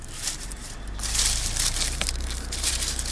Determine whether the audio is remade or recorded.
remade